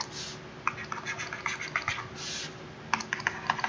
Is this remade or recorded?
recorded